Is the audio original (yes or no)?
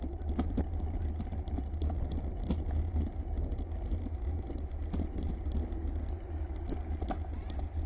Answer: yes